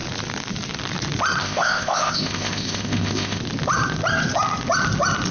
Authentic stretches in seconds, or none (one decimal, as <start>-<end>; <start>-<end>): 0.0-1.4; 3.4-5.3